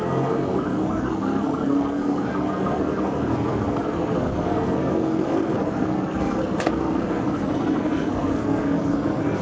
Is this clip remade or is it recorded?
remade